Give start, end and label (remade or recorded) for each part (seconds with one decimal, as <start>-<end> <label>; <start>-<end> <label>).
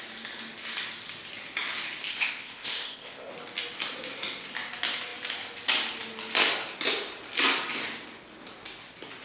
0.0-2.1 recorded; 2.1-3.3 remade; 3.3-9.2 recorded